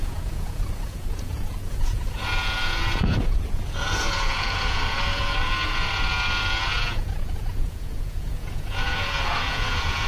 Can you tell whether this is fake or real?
fake